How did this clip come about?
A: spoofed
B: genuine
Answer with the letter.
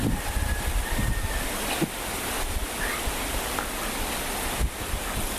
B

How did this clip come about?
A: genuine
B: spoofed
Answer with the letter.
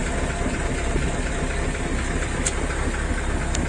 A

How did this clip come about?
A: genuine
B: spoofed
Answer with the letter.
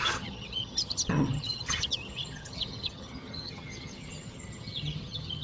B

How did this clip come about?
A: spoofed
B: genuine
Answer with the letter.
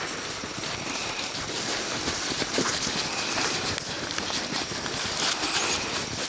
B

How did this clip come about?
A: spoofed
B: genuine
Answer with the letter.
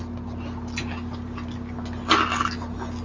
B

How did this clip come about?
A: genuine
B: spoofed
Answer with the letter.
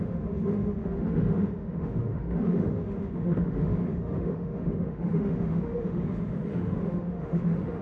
B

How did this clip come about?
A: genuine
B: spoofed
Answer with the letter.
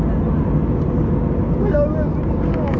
A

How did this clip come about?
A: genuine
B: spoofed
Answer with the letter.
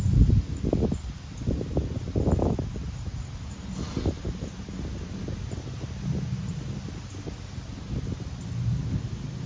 A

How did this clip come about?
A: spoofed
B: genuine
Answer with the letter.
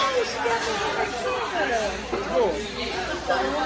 B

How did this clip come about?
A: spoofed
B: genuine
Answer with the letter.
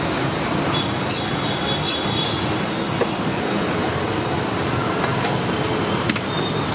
B